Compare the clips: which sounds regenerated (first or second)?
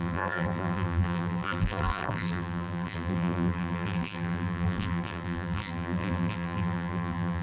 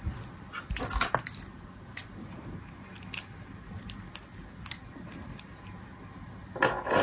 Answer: first